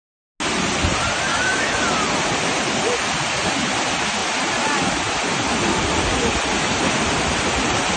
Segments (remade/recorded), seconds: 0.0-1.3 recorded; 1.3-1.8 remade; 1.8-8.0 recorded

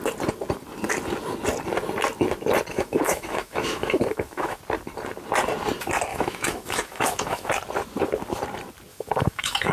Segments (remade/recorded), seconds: 0.0-2.7 recorded; 2.7-4.6 remade; 4.6-6.1 recorded; 6.1-7.5 remade; 7.5-8.9 recorded; 8.9-9.7 remade

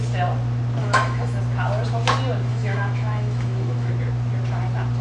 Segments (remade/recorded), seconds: 0.0-0.8 recorded; 0.8-1.4 remade; 1.4-2.5 recorded; 2.5-3.9 remade; 3.9-5.0 recorded

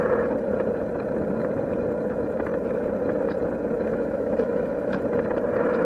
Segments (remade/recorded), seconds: 0.0-3.9 recorded; 3.9-5.0 remade; 5.0-5.8 recorded